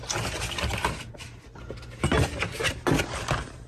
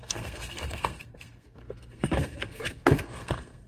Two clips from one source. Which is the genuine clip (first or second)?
first